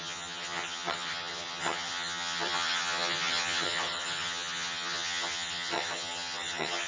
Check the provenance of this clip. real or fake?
fake